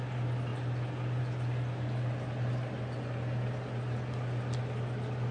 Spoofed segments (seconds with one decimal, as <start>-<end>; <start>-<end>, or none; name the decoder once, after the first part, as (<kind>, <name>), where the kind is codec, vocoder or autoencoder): none

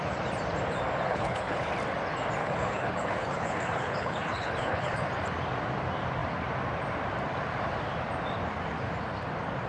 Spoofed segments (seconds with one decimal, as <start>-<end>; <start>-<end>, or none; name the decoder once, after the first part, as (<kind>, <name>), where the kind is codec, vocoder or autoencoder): 1.1-1.7 (codec, HILCodec); 2.4-5.0

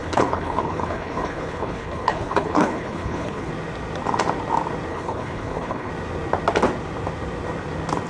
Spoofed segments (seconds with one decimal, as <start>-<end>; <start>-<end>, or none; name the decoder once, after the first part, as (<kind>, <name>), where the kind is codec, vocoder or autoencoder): 0.0-3.5 (codec, HILCodec); 4.9-5.9

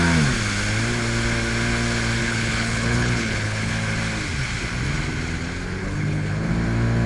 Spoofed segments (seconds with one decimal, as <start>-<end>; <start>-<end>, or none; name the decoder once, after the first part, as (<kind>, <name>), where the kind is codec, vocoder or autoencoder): 2.2-3.7 (codec, HILCodec); 5.8-6.5

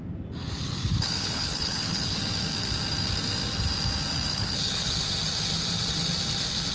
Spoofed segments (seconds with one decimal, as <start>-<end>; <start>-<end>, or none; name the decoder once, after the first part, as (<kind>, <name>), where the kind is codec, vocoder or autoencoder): 0.4-2.2 (codec, HILCodec); 4.3-5.0

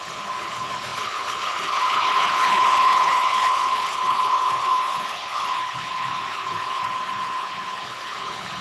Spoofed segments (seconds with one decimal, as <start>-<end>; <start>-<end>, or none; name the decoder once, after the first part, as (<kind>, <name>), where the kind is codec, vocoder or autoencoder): 0.0-8.6 (codec, HILCodec)

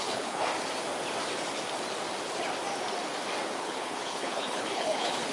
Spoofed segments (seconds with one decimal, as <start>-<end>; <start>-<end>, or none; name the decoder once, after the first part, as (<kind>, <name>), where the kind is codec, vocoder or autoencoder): 0.0-0.5 (codec, HILCodec); 3.6-5.3